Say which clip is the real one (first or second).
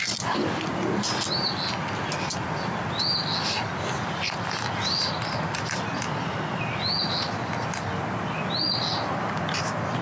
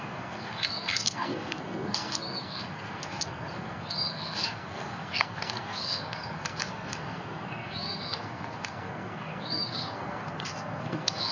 first